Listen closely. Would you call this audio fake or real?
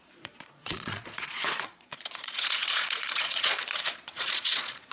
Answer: fake